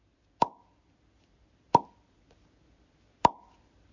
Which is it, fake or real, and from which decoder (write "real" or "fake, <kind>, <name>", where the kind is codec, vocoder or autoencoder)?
real